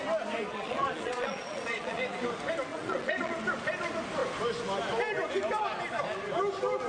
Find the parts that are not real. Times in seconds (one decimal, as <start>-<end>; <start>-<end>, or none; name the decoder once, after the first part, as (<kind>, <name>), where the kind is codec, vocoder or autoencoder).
0.5-2.0 (vocoder, Vocos); 2.7-3.3